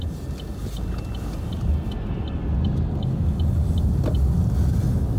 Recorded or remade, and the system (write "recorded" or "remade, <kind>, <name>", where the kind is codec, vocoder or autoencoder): recorded